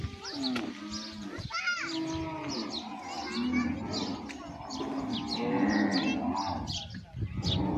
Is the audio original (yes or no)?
yes